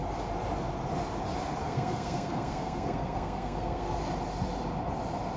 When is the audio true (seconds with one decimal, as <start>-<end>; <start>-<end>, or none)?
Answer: 0.0-1.6; 4.0-5.4